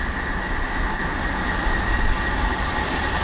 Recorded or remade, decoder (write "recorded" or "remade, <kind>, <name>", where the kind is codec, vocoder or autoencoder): recorded